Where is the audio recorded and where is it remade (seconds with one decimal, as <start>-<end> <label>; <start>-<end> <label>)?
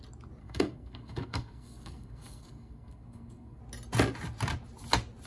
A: 0.0-0.4 recorded; 0.4-3.6 remade; 3.6-5.3 recorded